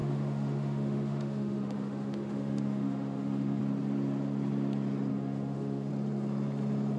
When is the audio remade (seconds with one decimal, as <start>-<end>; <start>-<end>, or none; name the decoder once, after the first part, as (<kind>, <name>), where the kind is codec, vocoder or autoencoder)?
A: 0.0-3.6 (autoencoder, DAC-VAE); 5.1-5.9

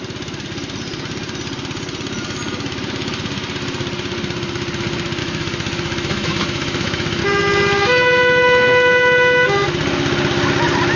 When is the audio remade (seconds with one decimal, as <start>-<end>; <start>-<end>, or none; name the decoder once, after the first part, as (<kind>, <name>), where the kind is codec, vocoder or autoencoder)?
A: 5.2-7.2 (autoencoder, DAC-VAE)

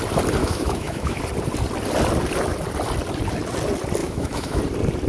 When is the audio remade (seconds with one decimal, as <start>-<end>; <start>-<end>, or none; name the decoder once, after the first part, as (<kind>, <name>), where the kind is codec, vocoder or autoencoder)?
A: 0.4-1.2 (autoencoder, DAC-VAE); 4.0-4.6

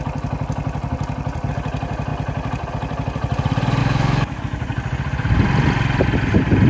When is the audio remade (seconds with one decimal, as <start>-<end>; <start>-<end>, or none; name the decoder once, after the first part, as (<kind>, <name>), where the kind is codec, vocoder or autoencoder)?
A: 3.8-4.4 (autoencoder, DAC-VAE)